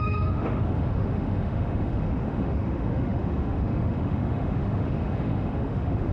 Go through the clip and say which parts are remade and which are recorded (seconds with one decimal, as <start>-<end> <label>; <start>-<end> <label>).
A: 0.0-6.1 remade